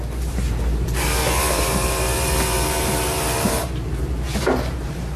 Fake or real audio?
fake